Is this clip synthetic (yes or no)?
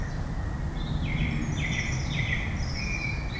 no